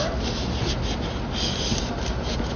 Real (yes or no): yes